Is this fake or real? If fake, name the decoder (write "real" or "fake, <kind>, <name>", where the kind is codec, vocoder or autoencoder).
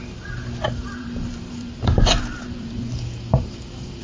fake, vocoder, BigVGAN v2